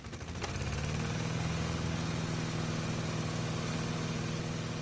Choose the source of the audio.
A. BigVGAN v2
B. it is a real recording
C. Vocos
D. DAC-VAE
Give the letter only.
B